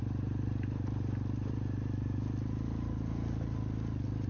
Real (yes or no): yes